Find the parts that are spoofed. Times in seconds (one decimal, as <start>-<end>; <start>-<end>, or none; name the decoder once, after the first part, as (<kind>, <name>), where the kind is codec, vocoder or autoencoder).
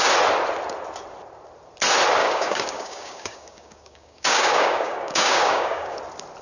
2.2-6.0 (codec, DAC)